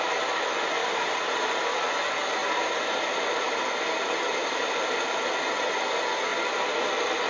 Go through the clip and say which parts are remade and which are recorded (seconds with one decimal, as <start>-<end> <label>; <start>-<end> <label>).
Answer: 0.0-0.8 recorded; 0.8-1.5 remade; 1.5-2.4 recorded; 2.4-5.2 remade; 5.2-7.3 recorded